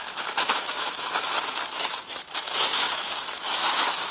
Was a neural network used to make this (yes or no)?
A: yes